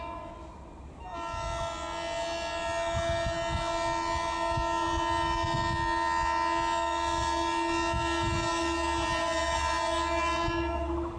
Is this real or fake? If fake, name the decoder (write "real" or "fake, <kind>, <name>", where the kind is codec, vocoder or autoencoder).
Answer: real